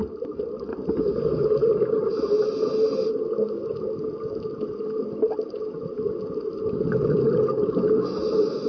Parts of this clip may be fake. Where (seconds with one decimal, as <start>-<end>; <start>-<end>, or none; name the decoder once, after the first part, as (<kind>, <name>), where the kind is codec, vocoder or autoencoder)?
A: none